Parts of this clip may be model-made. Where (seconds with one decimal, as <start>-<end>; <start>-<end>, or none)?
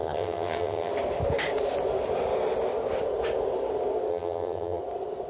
0.0-0.9; 4.1-4.8